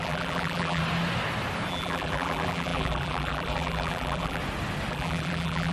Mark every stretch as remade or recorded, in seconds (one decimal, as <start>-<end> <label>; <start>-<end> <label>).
0.0-0.8 remade; 0.8-1.7 recorded; 1.7-4.4 remade; 4.4-4.9 recorded; 4.9-5.7 remade